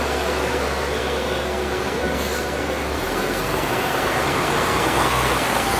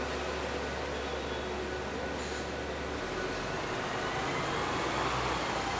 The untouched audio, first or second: second